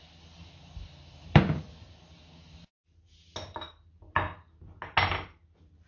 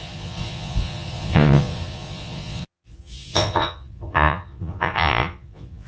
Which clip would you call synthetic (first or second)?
second